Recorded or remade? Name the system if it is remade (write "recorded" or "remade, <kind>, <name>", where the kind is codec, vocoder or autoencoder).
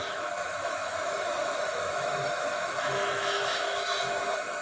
remade, autoencoder, DAC-VAE